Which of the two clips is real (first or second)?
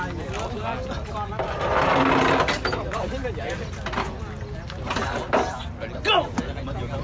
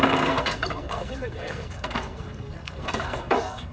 first